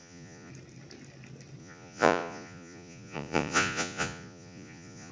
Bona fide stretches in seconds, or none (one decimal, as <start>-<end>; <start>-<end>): 0.5-1.6